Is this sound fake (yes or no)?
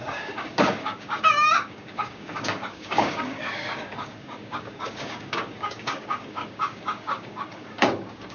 yes